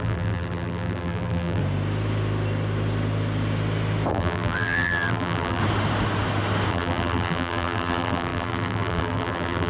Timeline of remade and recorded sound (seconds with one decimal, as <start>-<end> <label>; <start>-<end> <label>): 0.0-1.6 remade; 1.6-4.1 recorded; 4.1-5.6 remade; 5.6-6.7 recorded; 6.7-9.7 remade